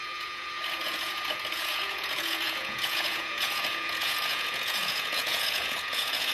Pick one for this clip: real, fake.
fake